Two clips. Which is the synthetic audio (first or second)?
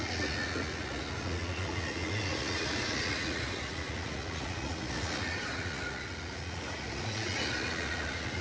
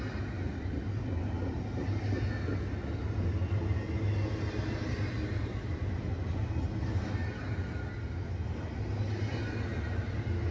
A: first